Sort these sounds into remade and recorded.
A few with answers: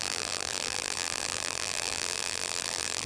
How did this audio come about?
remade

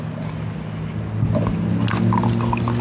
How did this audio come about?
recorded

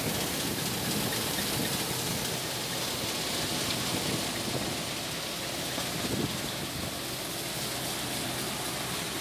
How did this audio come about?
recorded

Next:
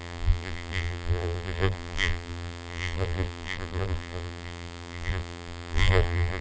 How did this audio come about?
remade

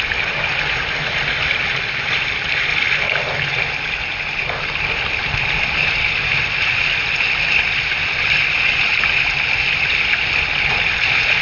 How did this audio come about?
recorded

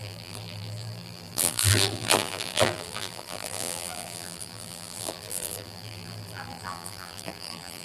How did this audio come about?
remade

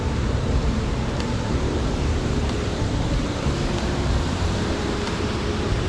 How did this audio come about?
remade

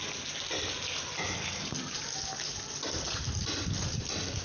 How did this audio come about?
recorded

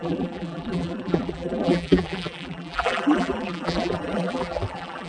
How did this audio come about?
remade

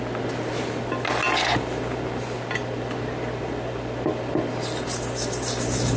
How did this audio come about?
recorded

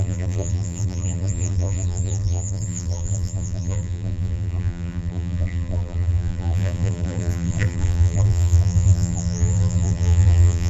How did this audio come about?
remade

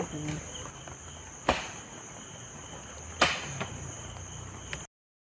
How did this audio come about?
recorded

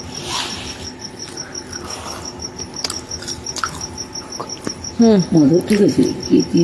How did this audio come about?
recorded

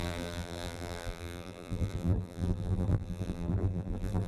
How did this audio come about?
remade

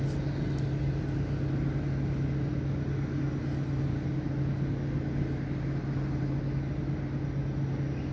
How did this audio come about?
recorded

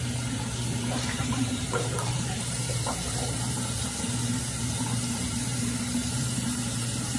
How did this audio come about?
remade